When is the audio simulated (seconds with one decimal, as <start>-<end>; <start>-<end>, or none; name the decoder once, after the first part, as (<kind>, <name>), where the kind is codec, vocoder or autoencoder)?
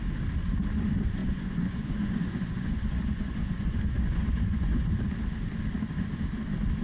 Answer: 1.2-4.9 (vocoder, Vocos)